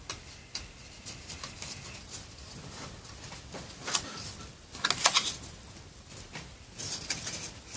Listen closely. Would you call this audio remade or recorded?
recorded